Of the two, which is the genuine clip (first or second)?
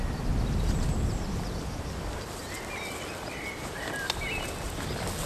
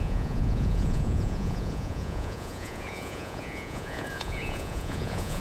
first